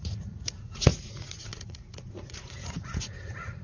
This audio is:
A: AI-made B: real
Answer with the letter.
A